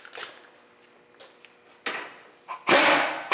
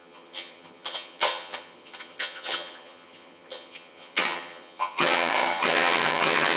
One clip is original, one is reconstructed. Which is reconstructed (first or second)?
second